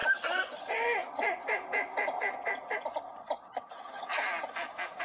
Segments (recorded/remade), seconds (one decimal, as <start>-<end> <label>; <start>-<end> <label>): 0.0-5.0 recorded